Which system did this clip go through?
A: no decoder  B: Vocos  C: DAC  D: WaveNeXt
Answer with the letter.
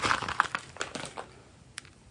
A